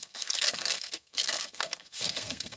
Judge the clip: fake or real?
fake